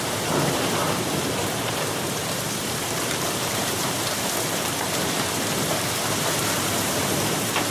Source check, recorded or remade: remade